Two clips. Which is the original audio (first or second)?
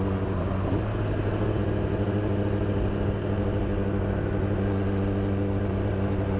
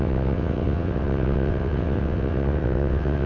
first